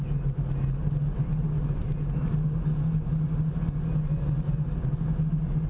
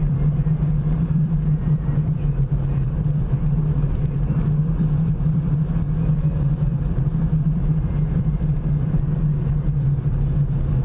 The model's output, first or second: second